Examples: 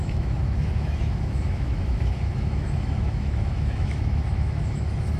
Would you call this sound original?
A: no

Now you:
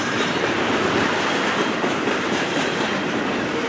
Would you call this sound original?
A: no